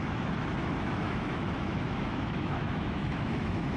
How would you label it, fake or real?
fake